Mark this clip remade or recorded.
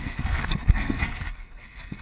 remade